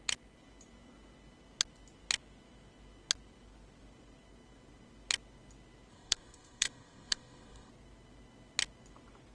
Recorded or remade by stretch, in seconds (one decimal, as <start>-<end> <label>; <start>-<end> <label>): 0.0-5.9 recorded; 5.9-7.7 remade; 7.7-9.3 recorded